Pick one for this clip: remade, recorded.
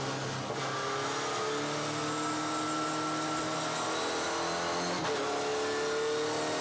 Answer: recorded